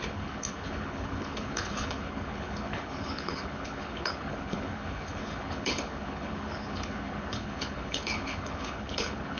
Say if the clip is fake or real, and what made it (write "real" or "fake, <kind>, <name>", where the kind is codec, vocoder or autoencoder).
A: fake, codec, HILCodec